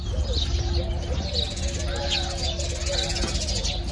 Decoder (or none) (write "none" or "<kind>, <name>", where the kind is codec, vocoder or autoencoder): none